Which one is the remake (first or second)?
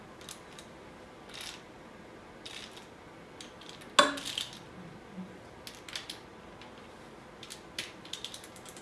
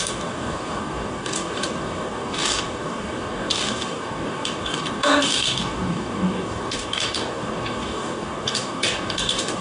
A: second